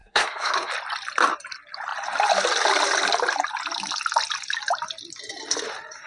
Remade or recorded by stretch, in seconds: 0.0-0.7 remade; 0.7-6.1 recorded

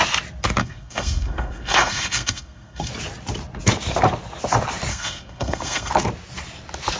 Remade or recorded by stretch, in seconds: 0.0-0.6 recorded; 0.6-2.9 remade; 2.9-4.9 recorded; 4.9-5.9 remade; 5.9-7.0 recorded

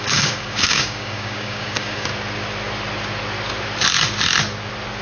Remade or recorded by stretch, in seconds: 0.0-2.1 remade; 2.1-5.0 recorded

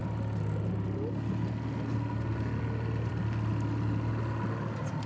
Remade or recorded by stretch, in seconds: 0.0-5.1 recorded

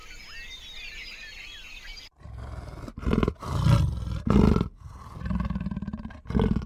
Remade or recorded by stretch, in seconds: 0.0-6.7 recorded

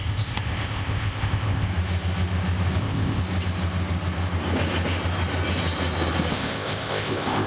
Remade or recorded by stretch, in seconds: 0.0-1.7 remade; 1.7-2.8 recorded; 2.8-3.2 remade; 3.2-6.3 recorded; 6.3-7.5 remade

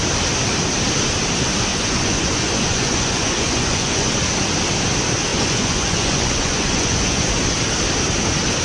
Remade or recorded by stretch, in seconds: 0.0-1.7 recorded; 1.7-4.2 remade; 4.2-5.3 recorded; 5.3-7.3 remade; 7.3-8.6 recorded